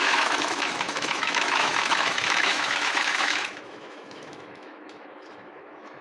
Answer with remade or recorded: remade